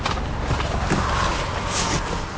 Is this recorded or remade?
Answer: recorded